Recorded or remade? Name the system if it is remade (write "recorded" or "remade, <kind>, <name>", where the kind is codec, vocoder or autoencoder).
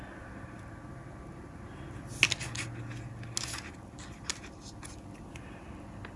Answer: recorded